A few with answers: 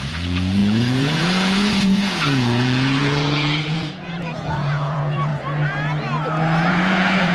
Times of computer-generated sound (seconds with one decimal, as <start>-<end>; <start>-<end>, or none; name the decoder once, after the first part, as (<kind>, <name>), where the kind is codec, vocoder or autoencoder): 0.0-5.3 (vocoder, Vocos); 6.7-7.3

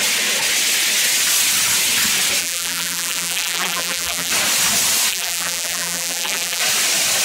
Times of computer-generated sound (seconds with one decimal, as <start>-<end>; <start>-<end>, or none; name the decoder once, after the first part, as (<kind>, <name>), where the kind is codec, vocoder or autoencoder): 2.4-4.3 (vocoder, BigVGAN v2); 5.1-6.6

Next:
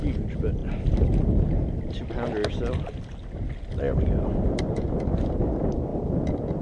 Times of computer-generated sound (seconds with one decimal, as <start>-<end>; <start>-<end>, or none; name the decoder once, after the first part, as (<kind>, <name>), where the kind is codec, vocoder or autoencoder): none

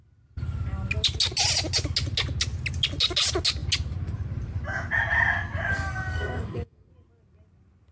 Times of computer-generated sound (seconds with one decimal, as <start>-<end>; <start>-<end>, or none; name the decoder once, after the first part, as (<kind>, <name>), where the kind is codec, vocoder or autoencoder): 5.7-6.9 (codec, SNAC)